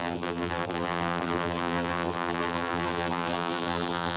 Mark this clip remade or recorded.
remade